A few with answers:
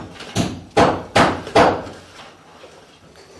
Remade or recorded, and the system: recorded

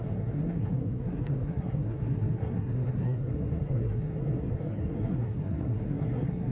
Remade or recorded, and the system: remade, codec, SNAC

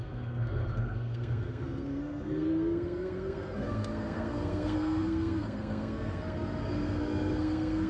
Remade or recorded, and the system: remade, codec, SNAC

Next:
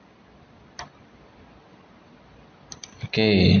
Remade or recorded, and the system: recorded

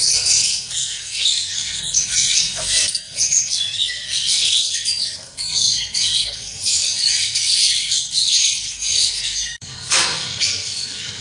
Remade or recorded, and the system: remade, codec, SNAC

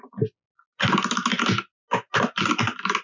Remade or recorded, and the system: recorded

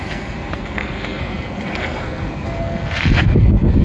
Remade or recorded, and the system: remade, codec, SNAC